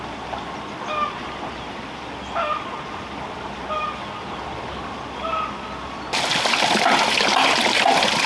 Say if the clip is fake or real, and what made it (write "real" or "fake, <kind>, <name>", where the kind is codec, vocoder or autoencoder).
real